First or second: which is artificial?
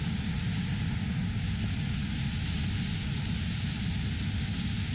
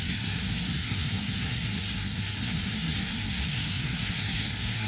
second